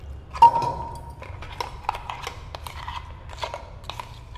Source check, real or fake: real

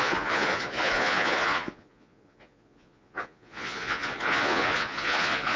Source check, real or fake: fake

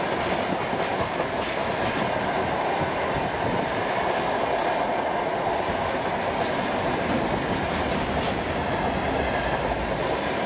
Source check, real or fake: real